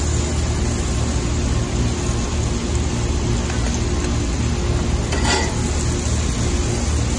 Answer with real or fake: real